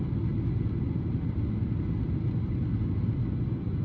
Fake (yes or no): no